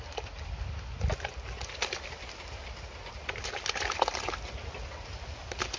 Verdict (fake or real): real